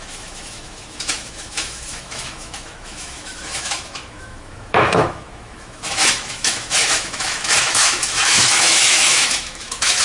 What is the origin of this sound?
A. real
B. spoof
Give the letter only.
B